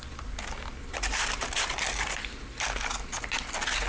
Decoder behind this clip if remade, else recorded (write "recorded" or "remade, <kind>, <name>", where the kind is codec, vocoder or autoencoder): recorded